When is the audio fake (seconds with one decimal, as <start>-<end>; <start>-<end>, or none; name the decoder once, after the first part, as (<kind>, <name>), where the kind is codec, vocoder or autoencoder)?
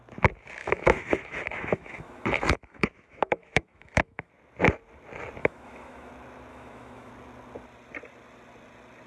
0.6-4.3 (autoencoder, DAC-VAE); 5.4-6.1; 6.5-7.1